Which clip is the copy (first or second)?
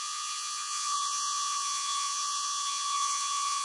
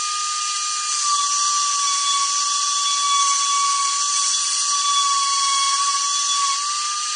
first